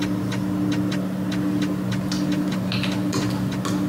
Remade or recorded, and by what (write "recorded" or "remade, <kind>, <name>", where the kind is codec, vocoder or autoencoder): recorded